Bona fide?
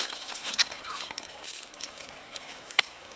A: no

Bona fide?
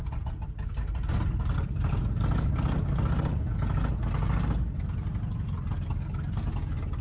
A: yes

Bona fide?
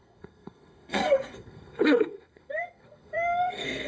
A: no